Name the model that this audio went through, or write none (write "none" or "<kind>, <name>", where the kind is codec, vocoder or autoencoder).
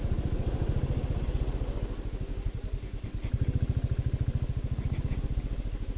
none